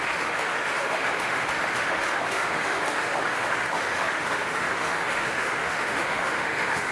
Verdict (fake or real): fake